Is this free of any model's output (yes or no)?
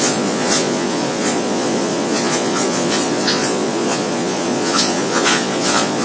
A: no